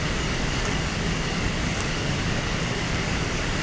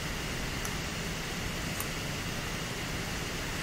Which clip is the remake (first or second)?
first